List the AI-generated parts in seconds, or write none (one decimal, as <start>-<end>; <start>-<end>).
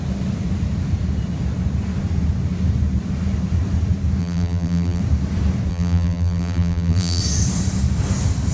4.2-5.0; 5.7-7.2